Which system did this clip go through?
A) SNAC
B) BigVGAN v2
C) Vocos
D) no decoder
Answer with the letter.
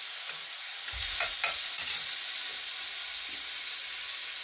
D